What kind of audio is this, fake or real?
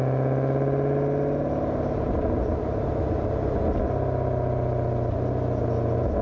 real